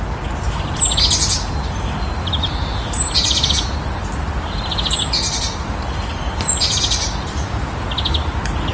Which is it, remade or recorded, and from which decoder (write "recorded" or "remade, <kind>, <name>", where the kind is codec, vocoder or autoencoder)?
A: recorded